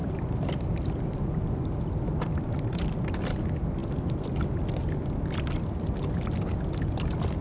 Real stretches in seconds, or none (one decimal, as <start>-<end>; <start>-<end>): 0.5-7.4

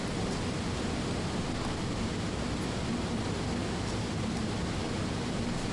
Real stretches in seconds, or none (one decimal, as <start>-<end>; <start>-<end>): 0.0-3.6; 4.4-5.7